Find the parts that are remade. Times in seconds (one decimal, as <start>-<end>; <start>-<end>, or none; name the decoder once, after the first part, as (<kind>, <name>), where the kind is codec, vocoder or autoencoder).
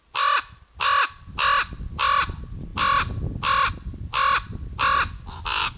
none